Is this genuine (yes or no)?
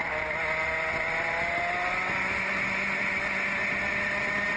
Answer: yes